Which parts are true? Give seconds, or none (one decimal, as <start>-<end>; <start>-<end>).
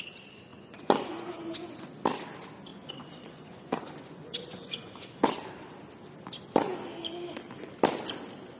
0.0-0.5; 1.9-2.7; 5.3-8.6